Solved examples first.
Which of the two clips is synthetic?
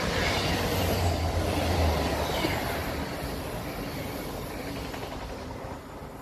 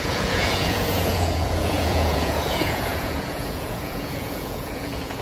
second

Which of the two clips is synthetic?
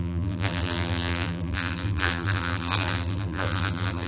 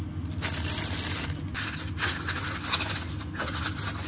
first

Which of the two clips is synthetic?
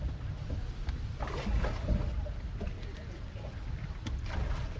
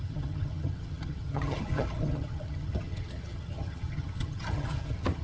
second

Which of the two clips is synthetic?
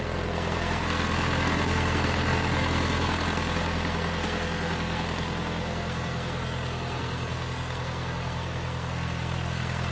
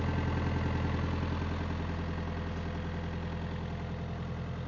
first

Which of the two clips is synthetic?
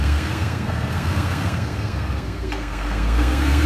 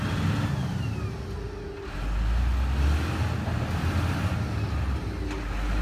first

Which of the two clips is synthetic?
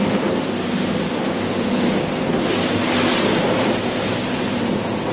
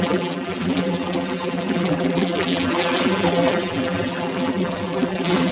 second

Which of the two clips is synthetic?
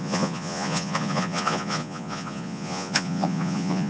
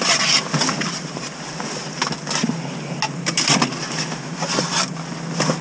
first